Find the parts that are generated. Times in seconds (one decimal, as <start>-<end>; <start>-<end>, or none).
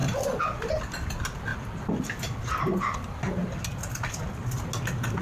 none